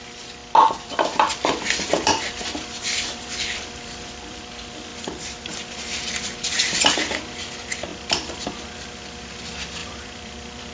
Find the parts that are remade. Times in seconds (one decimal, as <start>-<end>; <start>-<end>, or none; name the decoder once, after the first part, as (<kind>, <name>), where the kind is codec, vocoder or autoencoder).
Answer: 0.4-4.5 (vocoder, BigVGAN v2); 4.9-5.4; 7.9-8.5; 9.8-10.7